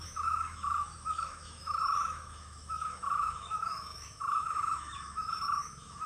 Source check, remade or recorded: remade